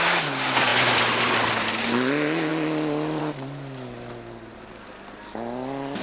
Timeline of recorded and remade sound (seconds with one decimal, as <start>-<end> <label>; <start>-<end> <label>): 0.0-6.0 recorded